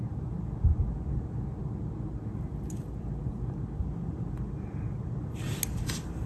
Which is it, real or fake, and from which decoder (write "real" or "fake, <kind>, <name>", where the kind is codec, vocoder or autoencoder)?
real